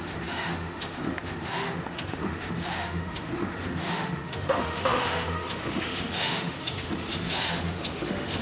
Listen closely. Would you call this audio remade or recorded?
remade